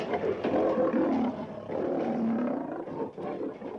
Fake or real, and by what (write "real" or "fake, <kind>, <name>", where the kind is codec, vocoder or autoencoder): real